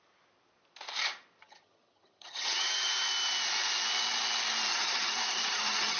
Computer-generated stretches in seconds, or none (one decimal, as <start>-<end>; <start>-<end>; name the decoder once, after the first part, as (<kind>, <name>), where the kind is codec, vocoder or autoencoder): 1.4-2.9 (vocoder, HiFi-GAN); 4.7-6.0